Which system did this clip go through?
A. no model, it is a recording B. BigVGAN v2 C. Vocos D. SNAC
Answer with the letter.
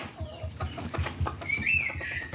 A